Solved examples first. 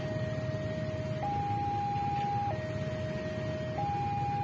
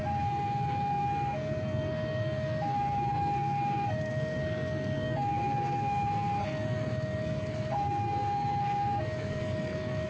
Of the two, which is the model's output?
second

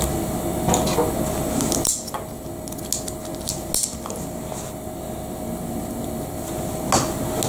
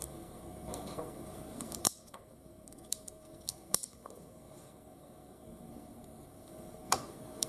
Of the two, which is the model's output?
second